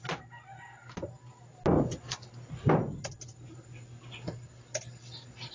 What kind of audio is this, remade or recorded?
recorded